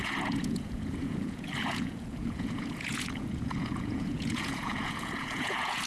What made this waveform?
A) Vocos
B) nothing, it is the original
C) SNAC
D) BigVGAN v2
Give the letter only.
A